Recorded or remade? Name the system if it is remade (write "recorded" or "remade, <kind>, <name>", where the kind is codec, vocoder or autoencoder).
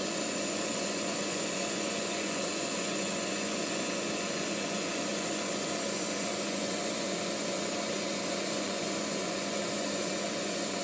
remade, vocoder, Vocos